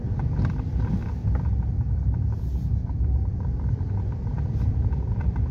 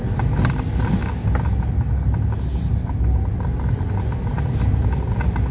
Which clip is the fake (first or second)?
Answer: first